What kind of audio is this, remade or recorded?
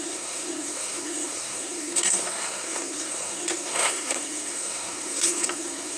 remade